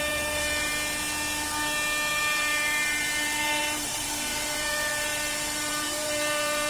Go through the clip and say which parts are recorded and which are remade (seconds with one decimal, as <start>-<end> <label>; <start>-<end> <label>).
0.0-0.7 remade; 0.7-2.1 recorded; 2.1-6.7 remade